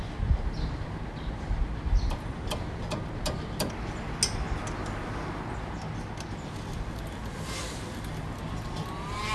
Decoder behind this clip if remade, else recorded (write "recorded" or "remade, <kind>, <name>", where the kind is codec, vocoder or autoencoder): recorded